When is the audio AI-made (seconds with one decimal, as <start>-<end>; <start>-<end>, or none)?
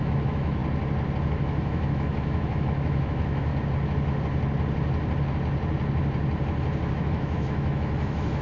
0.0-0.6; 1.3-3.5; 6.9-8.4